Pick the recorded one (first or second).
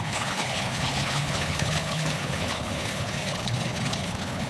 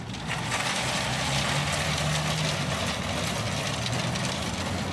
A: second